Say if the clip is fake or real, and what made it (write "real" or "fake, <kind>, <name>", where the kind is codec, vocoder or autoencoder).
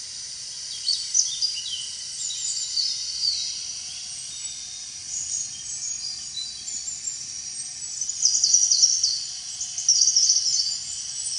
real